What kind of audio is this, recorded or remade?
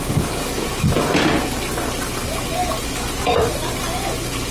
recorded